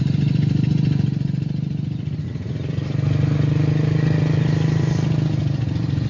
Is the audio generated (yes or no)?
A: no